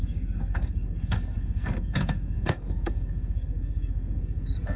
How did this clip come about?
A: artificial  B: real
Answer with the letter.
A